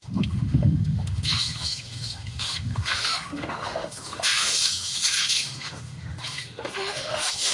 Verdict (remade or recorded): remade